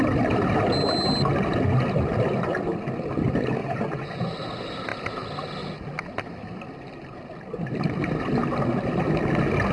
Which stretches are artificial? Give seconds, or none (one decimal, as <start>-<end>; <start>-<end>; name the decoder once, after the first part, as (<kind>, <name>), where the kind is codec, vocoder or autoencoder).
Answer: 3.6-4.2 (vocoder, Vocos)